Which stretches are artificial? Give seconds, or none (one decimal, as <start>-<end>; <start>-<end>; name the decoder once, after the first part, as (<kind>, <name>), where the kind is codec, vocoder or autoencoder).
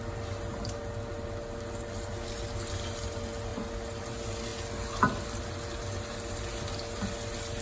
none